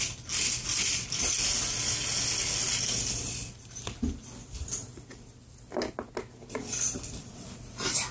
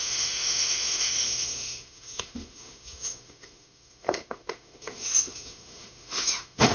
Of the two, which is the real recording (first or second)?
first